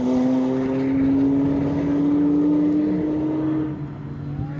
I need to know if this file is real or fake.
real